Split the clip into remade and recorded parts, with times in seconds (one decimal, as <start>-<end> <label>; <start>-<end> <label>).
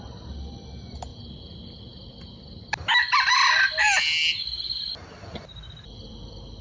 0.0-6.6 recorded